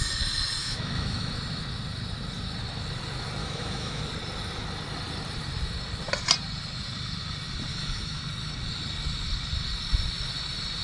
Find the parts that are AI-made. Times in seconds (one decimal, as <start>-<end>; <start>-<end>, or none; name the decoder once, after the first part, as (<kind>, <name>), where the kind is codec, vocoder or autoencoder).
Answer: 0.6-1.3 (autoencoder, DAC-VAE); 3.4-4.0; 7.7-8.2